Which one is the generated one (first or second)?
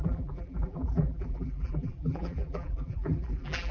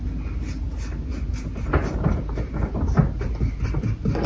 first